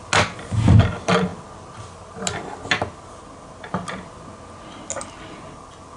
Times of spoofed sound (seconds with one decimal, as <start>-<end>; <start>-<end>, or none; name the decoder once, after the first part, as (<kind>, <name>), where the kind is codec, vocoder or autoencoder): none

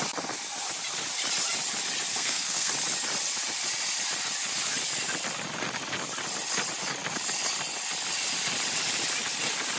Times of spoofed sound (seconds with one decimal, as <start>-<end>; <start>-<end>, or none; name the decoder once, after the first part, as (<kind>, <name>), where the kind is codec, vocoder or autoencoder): 2.1-2.7 (codec, SNAC)

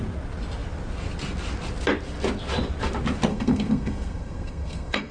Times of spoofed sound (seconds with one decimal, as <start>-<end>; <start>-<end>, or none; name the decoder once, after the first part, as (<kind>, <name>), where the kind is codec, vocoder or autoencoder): 3.3-5.1 (codec, SNAC)

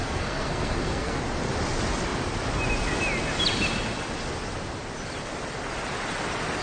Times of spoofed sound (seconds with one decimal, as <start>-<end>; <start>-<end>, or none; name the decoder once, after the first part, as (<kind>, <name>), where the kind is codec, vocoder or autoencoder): 0.0-1.2 (codec, SNAC)

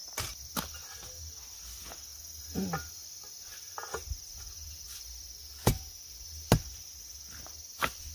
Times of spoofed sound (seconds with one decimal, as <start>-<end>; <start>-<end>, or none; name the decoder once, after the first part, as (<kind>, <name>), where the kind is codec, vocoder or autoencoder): none

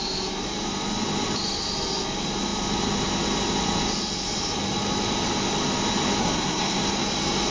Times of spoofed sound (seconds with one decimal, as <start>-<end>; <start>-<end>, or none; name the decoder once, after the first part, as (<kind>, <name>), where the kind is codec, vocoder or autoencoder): 6.2-6.8 (codec, SNAC)